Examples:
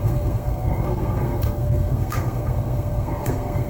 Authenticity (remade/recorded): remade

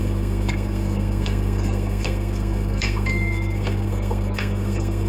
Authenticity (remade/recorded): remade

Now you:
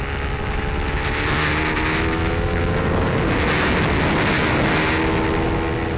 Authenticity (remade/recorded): recorded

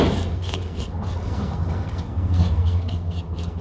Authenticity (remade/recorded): remade